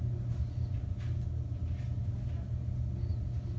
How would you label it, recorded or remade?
recorded